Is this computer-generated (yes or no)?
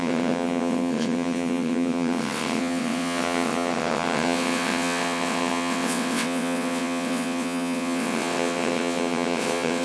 yes